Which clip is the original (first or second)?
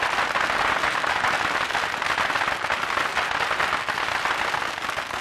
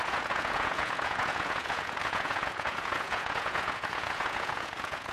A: first